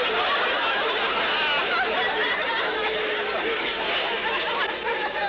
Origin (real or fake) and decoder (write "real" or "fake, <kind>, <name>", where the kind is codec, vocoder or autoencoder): real